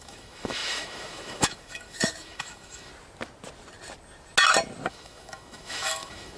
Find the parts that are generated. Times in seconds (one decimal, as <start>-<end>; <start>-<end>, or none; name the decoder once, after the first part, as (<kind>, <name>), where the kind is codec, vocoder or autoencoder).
0.0-2.9 (autoencoder, DAC-VAE); 4.9-6.4